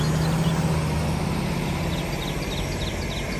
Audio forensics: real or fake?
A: real